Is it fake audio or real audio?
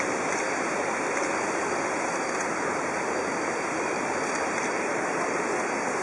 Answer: fake